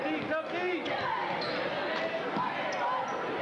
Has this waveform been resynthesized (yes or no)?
no